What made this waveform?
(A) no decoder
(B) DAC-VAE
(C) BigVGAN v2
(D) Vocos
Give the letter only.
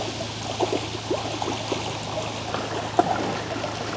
A